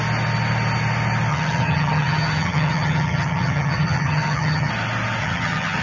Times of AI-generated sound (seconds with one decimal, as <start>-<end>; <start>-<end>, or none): 1.3-4.7; 5.2-5.8